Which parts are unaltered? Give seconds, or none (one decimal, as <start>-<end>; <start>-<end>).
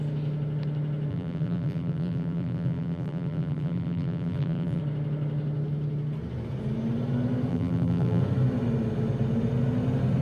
0.0-1.1; 4.8-7.5; 8.2-10.2